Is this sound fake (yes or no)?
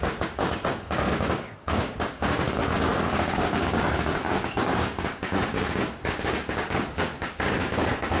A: yes